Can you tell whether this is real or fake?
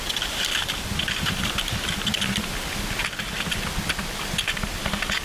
real